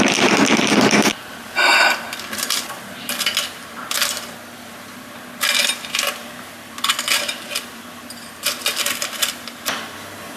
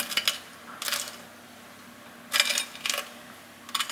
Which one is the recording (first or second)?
second